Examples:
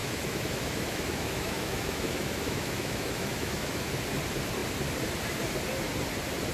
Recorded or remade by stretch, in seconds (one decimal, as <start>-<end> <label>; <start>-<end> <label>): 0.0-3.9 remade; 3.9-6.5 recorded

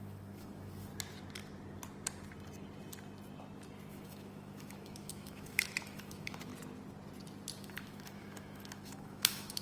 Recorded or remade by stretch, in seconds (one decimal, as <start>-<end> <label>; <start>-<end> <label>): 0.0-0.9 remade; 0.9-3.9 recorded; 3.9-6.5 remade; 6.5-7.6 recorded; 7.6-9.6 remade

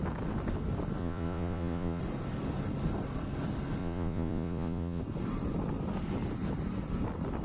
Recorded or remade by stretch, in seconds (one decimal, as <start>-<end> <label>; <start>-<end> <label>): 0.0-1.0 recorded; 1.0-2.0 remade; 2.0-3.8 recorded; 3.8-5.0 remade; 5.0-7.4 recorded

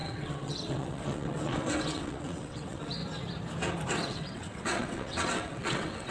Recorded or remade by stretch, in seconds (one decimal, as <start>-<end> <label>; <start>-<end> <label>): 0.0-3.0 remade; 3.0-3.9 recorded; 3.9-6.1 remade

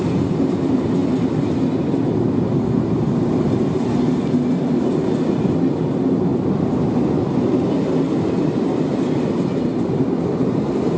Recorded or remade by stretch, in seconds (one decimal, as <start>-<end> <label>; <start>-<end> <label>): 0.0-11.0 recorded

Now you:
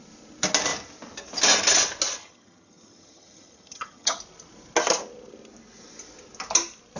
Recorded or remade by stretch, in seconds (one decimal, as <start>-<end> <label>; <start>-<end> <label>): 0.0-2.2 recorded; 2.2-4.2 remade; 4.2-7.0 recorded

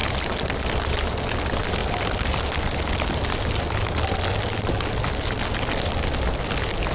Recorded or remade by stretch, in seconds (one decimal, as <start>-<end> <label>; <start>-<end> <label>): 0.0-6.9 recorded